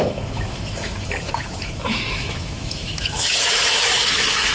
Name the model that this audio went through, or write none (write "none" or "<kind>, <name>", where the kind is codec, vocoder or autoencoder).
autoencoder, DAC-VAE